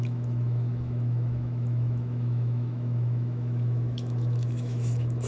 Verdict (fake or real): fake